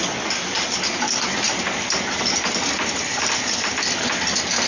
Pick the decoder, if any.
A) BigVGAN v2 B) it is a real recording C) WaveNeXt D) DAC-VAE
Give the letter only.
B